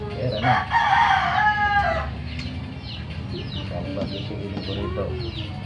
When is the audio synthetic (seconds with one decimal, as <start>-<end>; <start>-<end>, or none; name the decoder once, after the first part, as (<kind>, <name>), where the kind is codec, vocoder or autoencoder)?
none